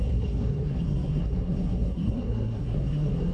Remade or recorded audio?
remade